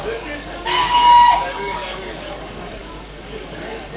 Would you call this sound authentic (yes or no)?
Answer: no